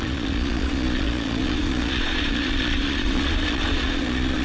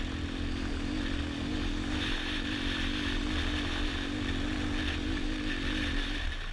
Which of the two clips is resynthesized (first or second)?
first